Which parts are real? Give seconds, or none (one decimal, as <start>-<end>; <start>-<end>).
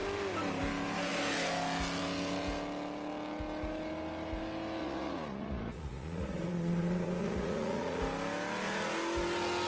0.0-4.8; 8.0-9.7